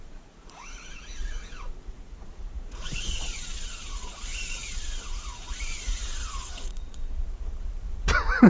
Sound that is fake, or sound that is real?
fake